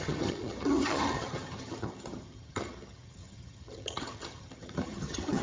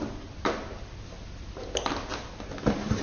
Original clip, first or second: second